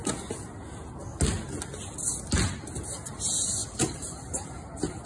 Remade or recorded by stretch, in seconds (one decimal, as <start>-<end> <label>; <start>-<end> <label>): 0.0-3.1 recorded; 3.1-5.1 remade